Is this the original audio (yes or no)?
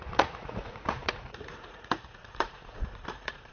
no